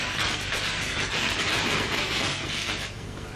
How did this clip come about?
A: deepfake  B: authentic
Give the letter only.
A